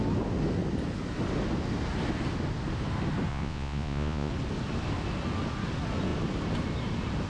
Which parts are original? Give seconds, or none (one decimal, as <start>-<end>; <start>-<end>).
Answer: 0.0-3.3; 4.3-7.3